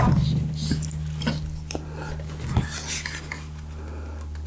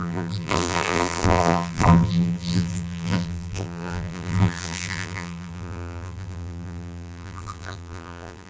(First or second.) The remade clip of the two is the second